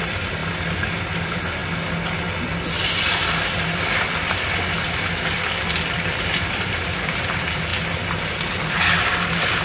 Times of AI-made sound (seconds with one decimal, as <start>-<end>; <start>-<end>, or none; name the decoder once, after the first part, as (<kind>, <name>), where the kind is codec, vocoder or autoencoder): 0.0-0.4 (vocoder, BigVGAN v2); 1.1-1.6; 6.3-9.6